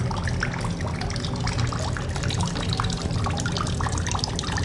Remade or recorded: recorded